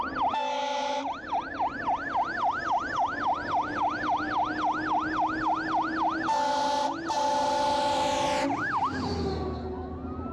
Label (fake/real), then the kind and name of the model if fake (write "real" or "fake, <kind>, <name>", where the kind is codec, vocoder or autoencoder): real